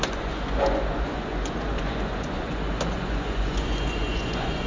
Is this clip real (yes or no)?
no